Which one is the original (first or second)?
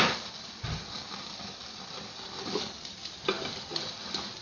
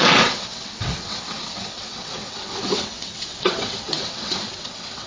first